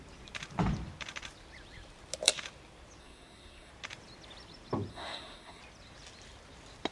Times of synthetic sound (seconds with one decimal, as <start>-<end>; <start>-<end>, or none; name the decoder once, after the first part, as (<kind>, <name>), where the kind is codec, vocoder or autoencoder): 3.0-3.7 (codec, SNAC); 4.9-5.6